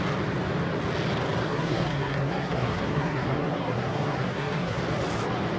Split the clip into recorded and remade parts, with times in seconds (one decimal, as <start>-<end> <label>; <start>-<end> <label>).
0.0-1.4 recorded; 1.4-4.8 remade; 4.8-5.6 recorded